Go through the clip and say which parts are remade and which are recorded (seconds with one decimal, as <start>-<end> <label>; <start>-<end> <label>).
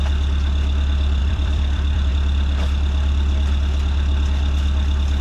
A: 0.0-1.2 recorded; 1.2-2.1 remade; 2.1-5.2 recorded